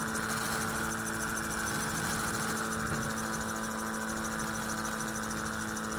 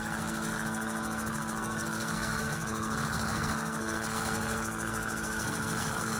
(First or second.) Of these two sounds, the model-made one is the second